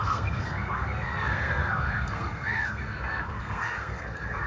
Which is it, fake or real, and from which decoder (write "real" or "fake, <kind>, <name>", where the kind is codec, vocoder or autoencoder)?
fake, codec, SNAC